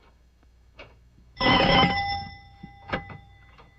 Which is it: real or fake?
fake